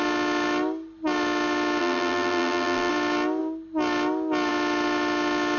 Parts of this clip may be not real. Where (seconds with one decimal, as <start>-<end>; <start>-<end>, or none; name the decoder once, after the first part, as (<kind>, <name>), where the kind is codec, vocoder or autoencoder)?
1.8-2.9 (vocoder, BigVGAN v2)